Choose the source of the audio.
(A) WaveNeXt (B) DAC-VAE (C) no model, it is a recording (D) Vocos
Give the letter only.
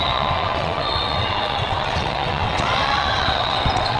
A